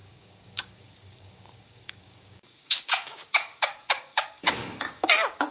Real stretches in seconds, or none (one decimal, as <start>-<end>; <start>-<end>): none